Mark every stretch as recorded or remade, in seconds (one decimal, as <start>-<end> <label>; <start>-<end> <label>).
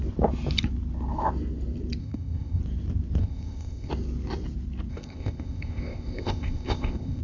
0.0-2.0 recorded; 2.0-2.6 remade; 2.6-3.2 recorded; 3.2-3.9 remade; 3.9-4.9 recorded; 4.9-7.2 remade